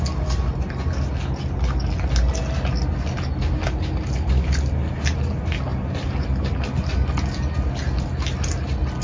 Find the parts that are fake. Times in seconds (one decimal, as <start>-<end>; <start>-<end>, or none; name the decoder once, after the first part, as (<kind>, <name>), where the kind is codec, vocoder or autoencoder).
none